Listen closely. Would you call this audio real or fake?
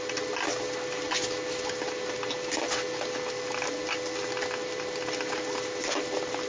real